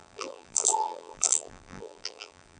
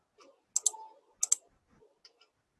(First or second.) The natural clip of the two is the second